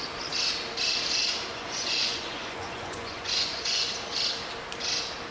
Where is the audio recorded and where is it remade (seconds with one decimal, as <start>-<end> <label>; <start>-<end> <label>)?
0.0-1.5 recorded; 1.5-3.9 remade; 3.9-5.3 recorded